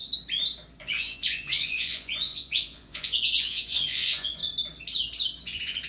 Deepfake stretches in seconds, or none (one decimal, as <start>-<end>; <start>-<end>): 0.8-4.4; 5.4-5.9